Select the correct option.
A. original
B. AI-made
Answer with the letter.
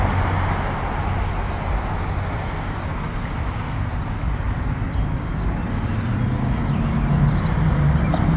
A